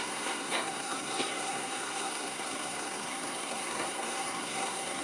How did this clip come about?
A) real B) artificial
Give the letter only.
B